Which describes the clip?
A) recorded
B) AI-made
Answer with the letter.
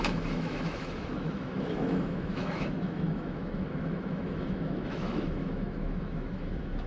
B